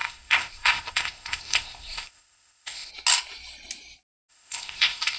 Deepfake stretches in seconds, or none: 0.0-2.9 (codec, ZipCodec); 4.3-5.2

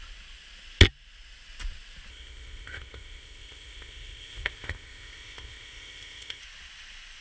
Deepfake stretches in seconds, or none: 2.1-6.4 (codec, ZipCodec)

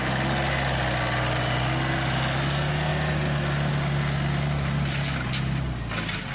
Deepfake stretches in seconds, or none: none

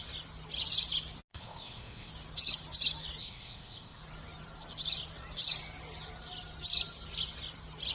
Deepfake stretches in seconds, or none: 1.3-2.1 (codec, ZipCodec); 3.2-4.0

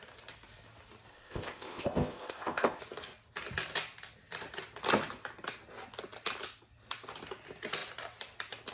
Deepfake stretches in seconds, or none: 1.1-2.8 (codec, ZipCodec)

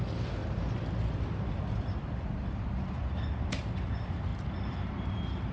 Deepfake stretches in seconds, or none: none

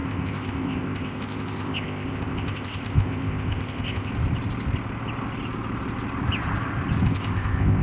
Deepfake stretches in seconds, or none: 0.0-4.1 (codec, ZipCodec); 7.0-7.8

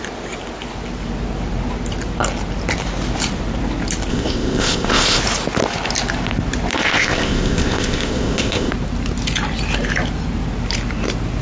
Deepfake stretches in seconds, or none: 4.1-5.2 (codec, ZipCodec); 6.7-8.7